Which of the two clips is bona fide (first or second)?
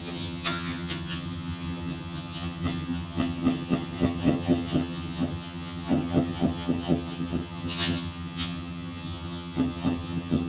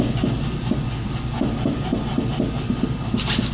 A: second